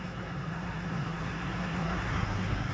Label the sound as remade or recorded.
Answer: remade